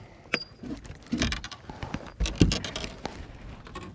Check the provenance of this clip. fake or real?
real